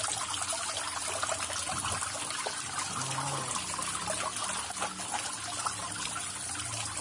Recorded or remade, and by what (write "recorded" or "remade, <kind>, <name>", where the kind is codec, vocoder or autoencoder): recorded